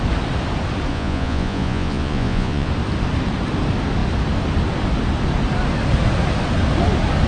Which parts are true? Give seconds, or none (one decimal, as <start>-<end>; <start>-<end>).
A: 0.0-0.9; 2.7-7.3